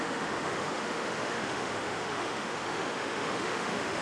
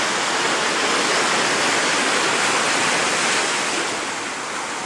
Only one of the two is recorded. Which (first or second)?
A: second